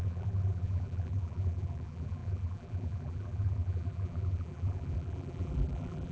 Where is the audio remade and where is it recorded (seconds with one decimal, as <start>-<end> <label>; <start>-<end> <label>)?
0.0-6.1 remade

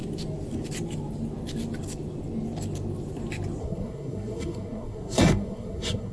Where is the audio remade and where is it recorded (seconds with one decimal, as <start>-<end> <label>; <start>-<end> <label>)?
0.0-3.6 recorded; 3.6-6.1 remade